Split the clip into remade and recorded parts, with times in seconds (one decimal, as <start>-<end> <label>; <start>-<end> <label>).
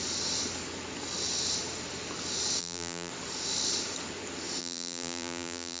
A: 0.0-2.6 recorded; 2.6-3.1 remade; 3.1-4.6 recorded; 4.6-5.8 remade